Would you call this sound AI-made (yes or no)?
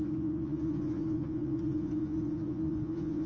yes